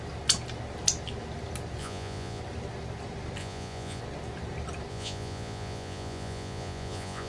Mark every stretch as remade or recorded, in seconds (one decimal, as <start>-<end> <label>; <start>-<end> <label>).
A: 0.0-1.8 recorded; 1.8-2.4 remade; 2.4-3.4 recorded; 3.4-4.0 remade; 4.0-4.9 recorded; 4.9-7.3 remade